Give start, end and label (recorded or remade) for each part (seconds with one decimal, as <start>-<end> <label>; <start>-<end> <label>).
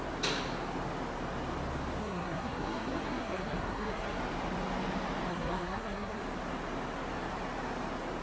0.0-2.0 recorded; 2.0-4.2 remade; 4.2-5.3 recorded; 5.3-6.2 remade; 6.2-8.2 recorded